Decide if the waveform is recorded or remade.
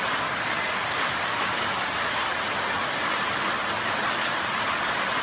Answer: recorded